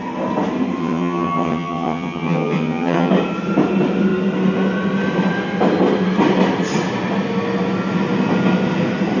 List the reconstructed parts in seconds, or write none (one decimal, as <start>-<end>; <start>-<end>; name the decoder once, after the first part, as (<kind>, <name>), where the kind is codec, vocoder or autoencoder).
0.8-3.1 (vocoder, HiFi-GAN)